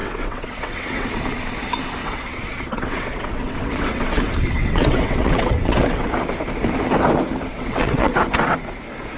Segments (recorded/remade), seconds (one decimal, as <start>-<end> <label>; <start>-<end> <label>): 0.0-1.1 remade; 1.1-2.0 recorded; 2.0-6.1 remade; 6.1-7.5 recorded; 7.5-8.1 remade; 8.1-9.2 recorded